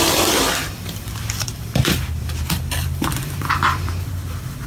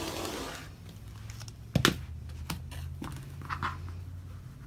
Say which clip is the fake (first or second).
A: first